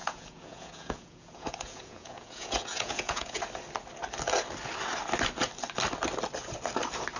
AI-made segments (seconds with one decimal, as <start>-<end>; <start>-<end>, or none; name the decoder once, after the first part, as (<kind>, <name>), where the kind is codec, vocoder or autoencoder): 0.0-3.4 (vocoder, Vocos)

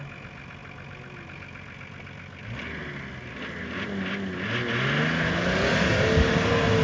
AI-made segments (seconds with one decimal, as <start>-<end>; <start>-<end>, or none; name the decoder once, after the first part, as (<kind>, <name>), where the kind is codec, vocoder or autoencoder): none

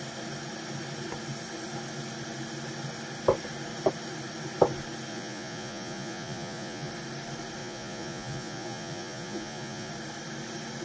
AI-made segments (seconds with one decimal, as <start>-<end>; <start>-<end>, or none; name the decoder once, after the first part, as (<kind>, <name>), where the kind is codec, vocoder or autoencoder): 5.1-6.9 (vocoder, Vocos); 7.6-9.9

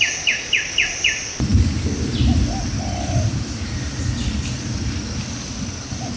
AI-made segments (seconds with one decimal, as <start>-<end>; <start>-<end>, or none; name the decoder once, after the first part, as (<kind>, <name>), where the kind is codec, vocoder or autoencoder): none

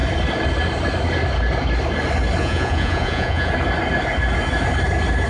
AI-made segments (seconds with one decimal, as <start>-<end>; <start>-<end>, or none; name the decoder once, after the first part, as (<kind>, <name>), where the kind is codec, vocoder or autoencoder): 2.4-3.5 (vocoder, Vocos)

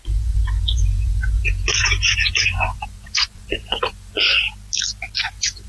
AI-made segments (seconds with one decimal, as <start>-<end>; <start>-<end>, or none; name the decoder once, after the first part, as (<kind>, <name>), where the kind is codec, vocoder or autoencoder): 0.0-4.3 (vocoder, Vocos); 5.3-5.7

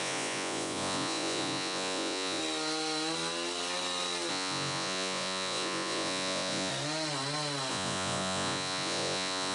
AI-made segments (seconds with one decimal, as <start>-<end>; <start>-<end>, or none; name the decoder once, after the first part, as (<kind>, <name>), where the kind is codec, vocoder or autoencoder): 0.0-2.4 (vocoder, Vocos); 4.3-6.7; 7.7-9.5

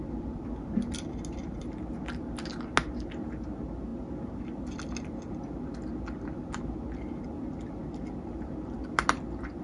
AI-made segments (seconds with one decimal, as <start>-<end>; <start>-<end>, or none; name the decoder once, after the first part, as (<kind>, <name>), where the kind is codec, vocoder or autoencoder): none